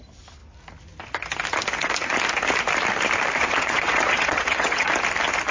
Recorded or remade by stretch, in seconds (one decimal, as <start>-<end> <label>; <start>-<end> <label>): 0.0-3.4 recorded; 3.4-4.9 remade; 4.9-5.5 recorded